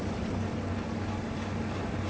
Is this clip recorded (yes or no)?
yes